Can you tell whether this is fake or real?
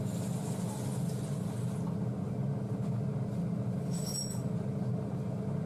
real